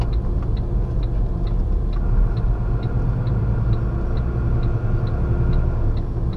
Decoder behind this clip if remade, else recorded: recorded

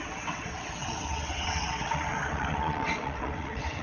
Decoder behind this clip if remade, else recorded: remade, vocoder, WaveNeXt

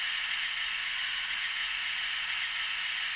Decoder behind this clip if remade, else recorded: remade, vocoder, Vocos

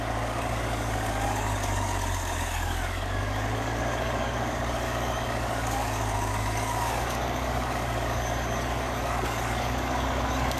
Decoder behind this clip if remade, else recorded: remade, codec, DAC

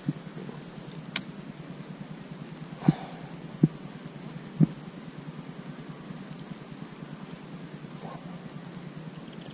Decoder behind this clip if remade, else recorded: recorded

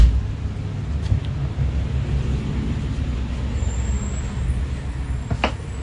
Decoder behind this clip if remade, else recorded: recorded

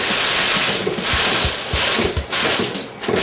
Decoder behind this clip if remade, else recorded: recorded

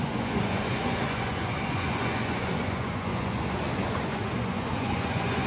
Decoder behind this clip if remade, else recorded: remade, vocoder, Vocos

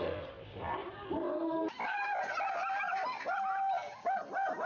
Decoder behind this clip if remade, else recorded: recorded